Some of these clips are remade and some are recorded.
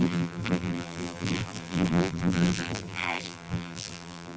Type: remade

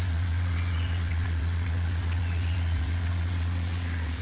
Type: remade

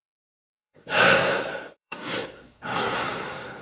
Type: remade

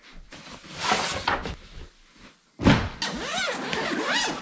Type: recorded